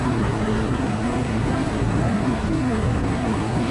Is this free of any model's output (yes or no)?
no